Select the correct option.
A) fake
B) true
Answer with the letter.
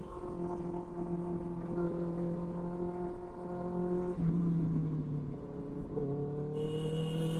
B